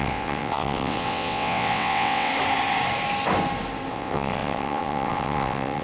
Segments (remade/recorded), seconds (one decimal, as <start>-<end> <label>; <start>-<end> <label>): 0.0-2.3 remade; 2.3-3.9 recorded; 3.9-5.8 remade